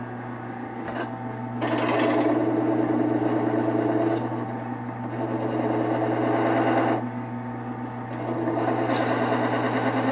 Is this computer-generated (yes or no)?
no